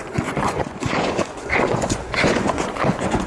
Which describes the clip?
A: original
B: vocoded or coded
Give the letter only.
B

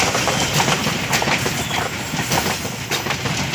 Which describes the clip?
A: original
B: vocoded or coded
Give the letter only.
A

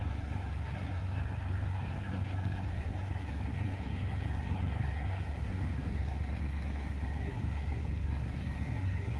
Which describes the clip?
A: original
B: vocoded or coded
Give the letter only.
B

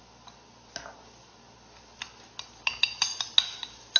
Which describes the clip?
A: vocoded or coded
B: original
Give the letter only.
B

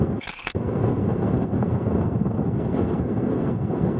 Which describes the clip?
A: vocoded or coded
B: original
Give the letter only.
A